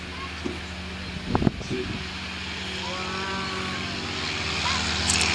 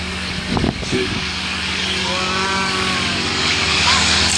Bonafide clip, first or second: first